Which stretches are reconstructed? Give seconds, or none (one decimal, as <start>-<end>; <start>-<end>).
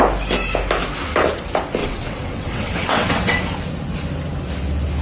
1.8-3.4